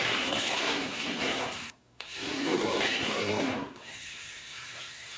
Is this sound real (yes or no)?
no